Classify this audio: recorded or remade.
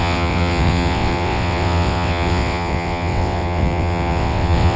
remade